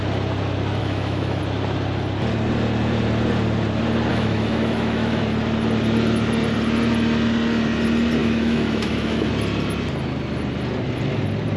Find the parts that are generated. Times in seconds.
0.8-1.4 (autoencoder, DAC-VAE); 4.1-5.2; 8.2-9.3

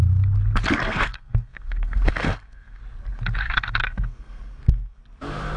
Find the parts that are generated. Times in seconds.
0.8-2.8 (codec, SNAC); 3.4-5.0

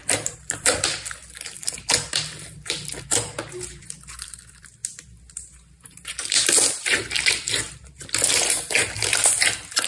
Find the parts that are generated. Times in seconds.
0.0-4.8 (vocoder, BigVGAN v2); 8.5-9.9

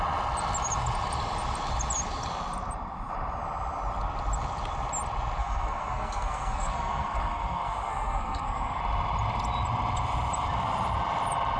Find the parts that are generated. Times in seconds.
5.4-8.8 (codec, SNAC)